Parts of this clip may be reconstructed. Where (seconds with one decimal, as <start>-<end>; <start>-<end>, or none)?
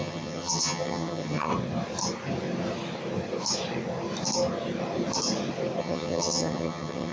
0.0-1.5; 5.8-7.1